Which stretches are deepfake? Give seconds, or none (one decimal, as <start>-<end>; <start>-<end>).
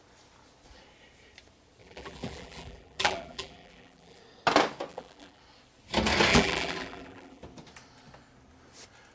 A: 1.8-4.2; 4.9-5.4; 6.3-7.4